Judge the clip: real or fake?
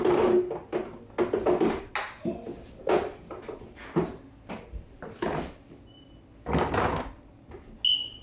real